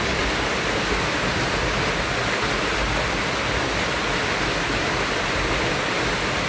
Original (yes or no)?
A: yes